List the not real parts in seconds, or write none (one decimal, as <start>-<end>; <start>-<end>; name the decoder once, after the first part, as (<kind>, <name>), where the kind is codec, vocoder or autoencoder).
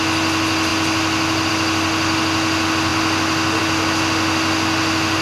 none